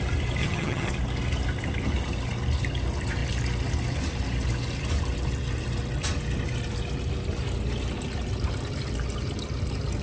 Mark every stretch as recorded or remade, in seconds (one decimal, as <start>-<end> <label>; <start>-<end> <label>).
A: 0.0-0.4 recorded; 0.4-0.9 remade; 0.9-10.0 recorded

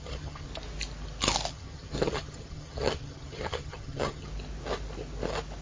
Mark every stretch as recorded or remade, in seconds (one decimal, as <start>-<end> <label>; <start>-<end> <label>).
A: 0.0-0.5 remade; 0.5-1.5 recorded; 1.5-4.3 remade; 4.3-5.6 recorded

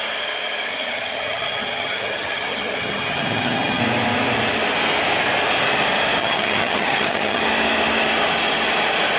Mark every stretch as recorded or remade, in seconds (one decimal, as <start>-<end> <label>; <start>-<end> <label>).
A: 0.0-0.7 recorded; 0.7-3.8 remade; 3.8-6.2 recorded; 6.2-7.4 remade; 7.4-9.2 recorded

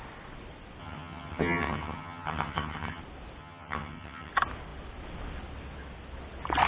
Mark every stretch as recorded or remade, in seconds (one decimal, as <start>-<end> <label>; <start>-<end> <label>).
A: 0.0-0.8 recorded; 0.8-3.0 remade; 3.0-3.4 recorded; 3.4-4.3 remade; 4.3-6.7 recorded

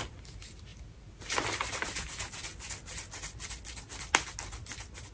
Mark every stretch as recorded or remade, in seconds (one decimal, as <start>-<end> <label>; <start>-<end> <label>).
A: 0.0-5.1 recorded